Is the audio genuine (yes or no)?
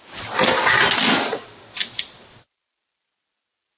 yes